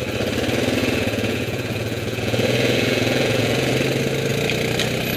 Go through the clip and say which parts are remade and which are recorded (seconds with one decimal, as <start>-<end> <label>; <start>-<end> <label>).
0.0-0.8 recorded; 0.8-3.7 remade; 3.7-5.2 recorded